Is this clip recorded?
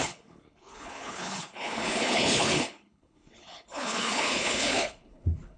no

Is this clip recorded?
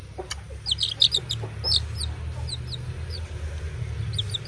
yes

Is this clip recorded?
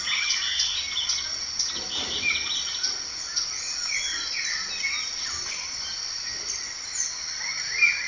yes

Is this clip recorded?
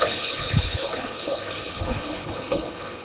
no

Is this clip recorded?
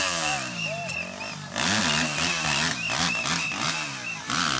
yes